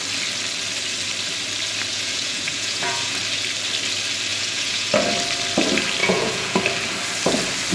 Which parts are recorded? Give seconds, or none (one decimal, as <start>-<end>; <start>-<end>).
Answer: 0.0-1.9; 3.2-4.3; 4.9-6.0; 6.6-7.7